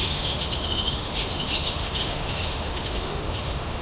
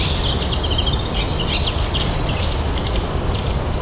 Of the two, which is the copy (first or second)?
first